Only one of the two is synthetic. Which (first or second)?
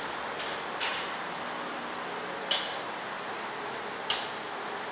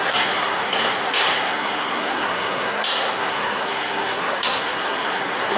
second